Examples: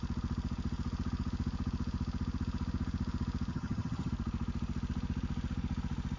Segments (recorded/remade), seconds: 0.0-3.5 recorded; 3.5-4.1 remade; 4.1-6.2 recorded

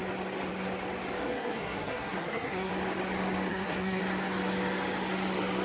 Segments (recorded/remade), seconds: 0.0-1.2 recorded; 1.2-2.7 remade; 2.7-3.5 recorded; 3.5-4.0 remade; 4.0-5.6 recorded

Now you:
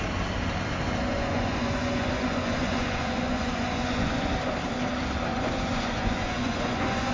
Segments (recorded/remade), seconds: 0.0-1.0 recorded; 1.0-4.3 remade; 4.3-5.3 recorded; 5.3-7.1 remade